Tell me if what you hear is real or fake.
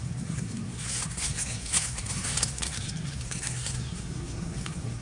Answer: fake